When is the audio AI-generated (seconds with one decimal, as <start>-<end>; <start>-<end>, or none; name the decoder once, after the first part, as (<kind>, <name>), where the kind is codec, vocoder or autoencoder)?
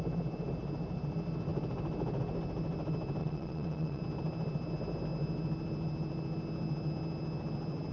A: 3.2-4.0 (vocoder, WaveNeXt)